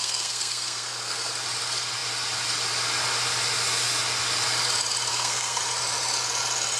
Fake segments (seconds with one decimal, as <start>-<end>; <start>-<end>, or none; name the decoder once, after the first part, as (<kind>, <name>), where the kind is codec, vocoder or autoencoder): 0.0-1.3 (codec, SNAC); 5.1-5.6